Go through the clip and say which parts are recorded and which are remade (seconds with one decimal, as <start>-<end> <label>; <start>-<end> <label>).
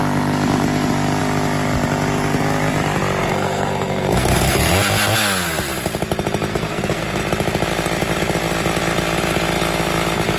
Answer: 0.0-3.2 recorded; 3.2-4.7 remade; 4.7-6.5 recorded; 6.5-7.2 remade; 7.2-10.4 recorded